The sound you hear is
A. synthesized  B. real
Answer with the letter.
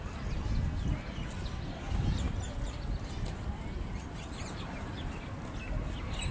B